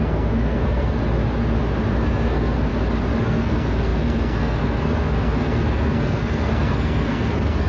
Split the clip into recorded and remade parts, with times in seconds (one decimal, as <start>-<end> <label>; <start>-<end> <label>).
0.0-1.0 remade; 1.0-1.9 recorded; 1.9-2.7 remade; 2.7-3.2 recorded; 3.2-7.7 remade